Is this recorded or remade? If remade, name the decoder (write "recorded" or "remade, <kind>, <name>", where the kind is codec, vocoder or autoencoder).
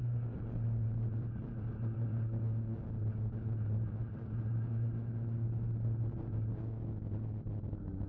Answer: recorded